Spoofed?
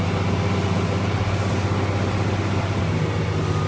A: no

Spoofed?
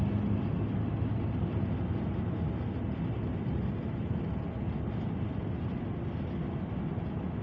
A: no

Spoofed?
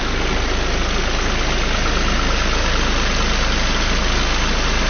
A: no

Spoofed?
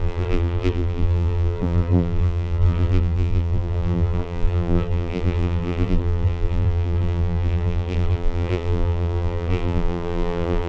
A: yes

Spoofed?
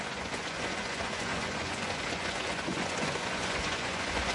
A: yes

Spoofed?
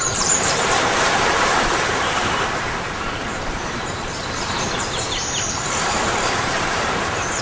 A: yes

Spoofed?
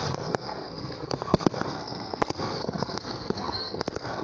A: yes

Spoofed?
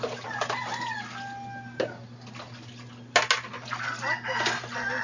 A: no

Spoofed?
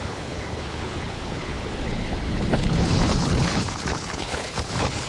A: yes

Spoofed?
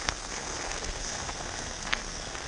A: yes